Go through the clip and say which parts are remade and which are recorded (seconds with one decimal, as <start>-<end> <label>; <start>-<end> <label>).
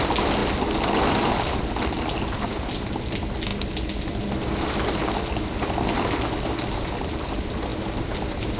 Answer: 0.0-8.6 recorded